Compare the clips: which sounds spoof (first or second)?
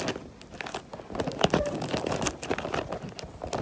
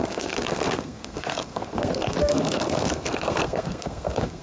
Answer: second